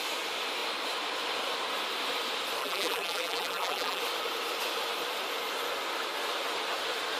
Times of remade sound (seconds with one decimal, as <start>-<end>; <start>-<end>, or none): 2.6-4.0